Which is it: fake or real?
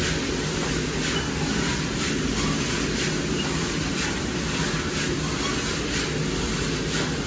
real